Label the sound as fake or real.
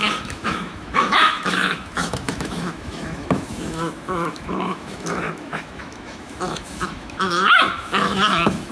fake